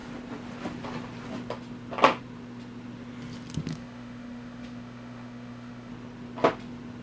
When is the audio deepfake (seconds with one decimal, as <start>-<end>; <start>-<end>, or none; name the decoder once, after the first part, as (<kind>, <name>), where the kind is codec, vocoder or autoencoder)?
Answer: 3.7-5.9 (autoencoder, DAC-VAE)